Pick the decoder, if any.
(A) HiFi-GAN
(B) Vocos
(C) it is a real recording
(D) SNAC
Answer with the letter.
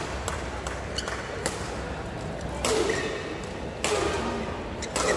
C